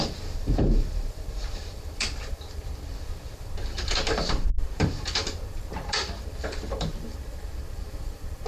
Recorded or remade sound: remade